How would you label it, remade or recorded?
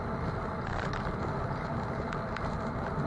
recorded